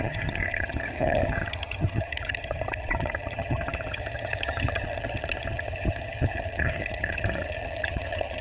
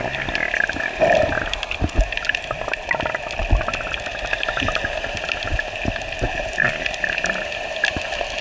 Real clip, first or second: second